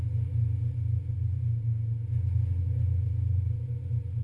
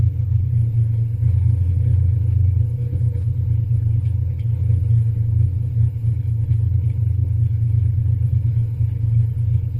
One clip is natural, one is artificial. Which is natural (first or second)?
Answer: first